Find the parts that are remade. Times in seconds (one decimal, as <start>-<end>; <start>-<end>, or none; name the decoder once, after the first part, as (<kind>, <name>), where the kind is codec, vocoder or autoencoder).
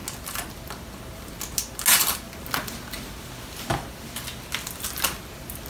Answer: none